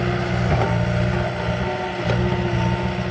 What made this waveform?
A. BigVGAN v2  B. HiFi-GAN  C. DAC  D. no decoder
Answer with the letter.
D